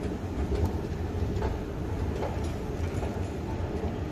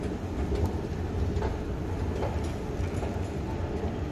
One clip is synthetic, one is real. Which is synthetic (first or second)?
first